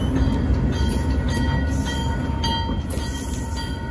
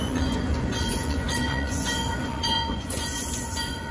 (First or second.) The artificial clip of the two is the second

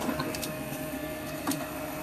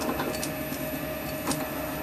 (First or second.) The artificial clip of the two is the first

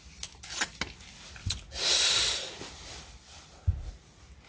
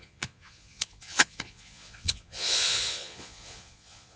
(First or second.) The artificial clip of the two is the second